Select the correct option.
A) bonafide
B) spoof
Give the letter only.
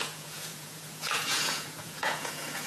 B